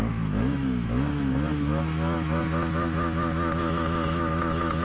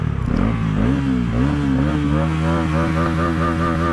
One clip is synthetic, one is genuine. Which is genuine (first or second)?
second